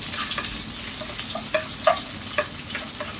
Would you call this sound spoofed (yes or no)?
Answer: no